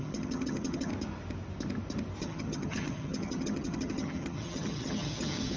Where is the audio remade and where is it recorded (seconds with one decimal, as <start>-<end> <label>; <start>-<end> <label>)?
0.0-0.9 remade; 0.9-2.2 recorded; 2.2-5.6 remade